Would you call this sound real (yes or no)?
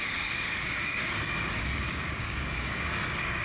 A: no